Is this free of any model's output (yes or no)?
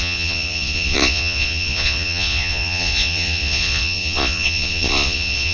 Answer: no